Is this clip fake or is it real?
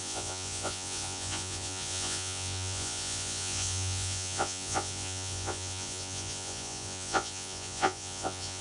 fake